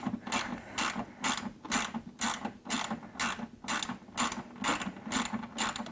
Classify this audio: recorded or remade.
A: recorded